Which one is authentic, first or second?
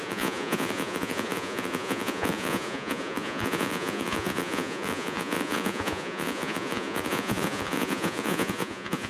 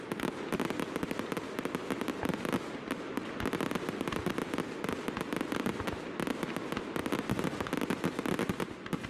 second